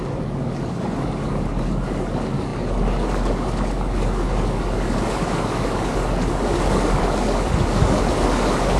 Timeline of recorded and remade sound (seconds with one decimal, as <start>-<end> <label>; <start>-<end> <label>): 0.0-8.8 remade